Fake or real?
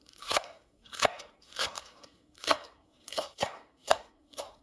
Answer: fake